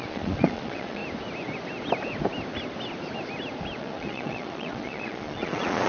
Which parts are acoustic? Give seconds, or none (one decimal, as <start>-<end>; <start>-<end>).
1.0-3.8

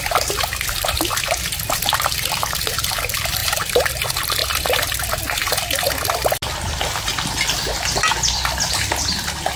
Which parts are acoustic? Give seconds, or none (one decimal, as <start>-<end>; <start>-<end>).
0.0-3.4; 3.9-9.6